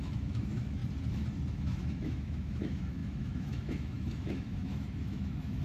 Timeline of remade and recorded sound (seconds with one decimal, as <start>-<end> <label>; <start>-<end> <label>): 0.0-0.8 remade; 0.8-1.5 recorded; 1.5-5.6 remade